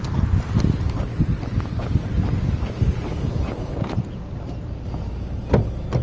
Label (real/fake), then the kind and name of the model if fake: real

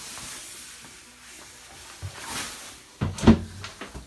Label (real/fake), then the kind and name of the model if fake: real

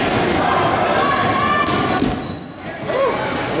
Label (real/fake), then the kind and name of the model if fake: real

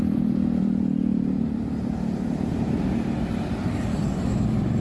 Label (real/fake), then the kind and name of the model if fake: fake, vocoder, BigVGAN v2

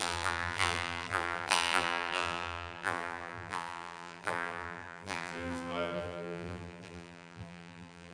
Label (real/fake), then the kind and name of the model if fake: fake, vocoder, BigVGAN v2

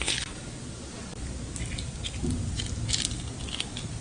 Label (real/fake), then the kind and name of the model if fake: real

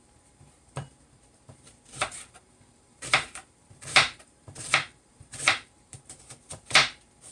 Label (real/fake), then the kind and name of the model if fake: fake, vocoder, BigVGAN v2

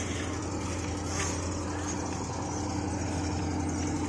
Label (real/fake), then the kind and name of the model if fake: real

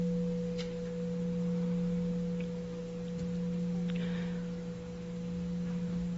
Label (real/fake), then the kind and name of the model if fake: real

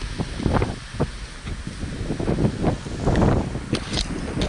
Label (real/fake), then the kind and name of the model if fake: real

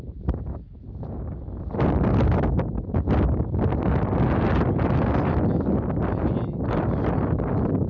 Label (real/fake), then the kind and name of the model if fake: real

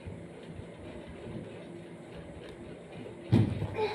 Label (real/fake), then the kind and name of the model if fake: real